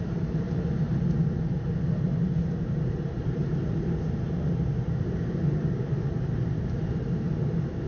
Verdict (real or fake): fake